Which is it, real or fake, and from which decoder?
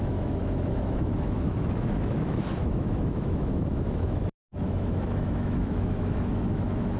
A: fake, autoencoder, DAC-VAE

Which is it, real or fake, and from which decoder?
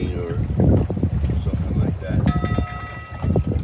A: real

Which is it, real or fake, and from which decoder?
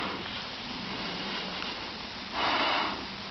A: real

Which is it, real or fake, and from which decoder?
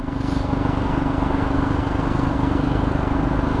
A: fake, codec, SNAC